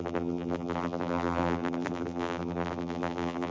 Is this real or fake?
fake